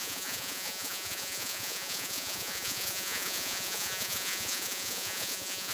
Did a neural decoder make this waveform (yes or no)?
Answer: yes